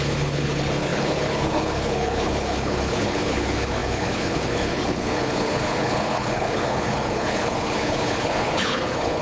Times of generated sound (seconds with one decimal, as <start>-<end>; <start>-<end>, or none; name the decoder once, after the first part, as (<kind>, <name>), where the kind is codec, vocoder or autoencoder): 0.0-9.2 (codec, HILCodec)